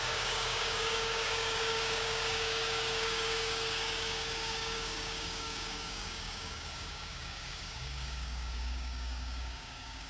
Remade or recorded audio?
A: remade